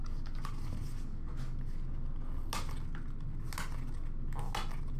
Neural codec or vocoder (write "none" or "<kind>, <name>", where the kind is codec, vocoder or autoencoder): none